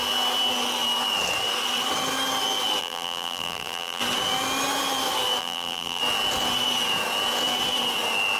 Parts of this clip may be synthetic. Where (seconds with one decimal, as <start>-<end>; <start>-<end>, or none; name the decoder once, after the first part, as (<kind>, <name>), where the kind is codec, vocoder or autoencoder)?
2.8-4.0 (vocoder, BigVGAN v2); 5.4-6.0